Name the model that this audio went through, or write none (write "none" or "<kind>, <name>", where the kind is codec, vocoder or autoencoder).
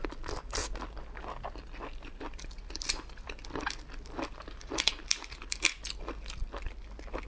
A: vocoder, BigVGAN v2